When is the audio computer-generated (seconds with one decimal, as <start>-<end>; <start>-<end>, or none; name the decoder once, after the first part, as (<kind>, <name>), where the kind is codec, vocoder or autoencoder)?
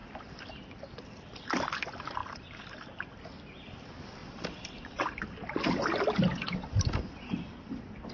0.0-0.5 (vocoder, BigVGAN v2); 2.2-3.2; 4.2-7.3